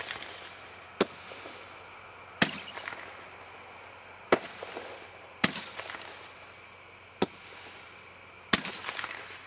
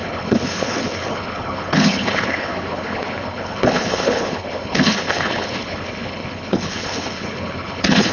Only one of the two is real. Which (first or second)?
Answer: first